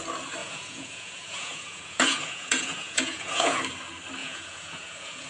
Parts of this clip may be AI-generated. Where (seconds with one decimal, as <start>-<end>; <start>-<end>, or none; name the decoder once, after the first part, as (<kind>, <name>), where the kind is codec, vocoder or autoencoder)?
0.4-3.6 (vocoder, Vocos); 4.2-5.3